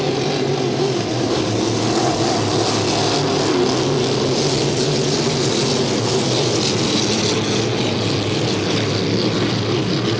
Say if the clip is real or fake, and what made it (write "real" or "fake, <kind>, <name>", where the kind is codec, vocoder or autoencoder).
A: real